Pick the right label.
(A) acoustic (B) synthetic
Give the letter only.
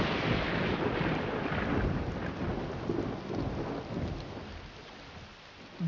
A